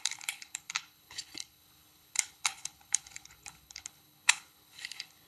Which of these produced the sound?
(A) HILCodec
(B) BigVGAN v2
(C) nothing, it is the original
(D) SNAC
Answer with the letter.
A